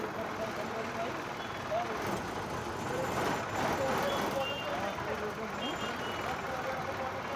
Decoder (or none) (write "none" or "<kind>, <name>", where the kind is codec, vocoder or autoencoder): none